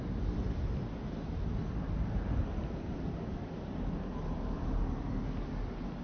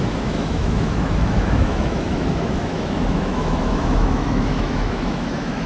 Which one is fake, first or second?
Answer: second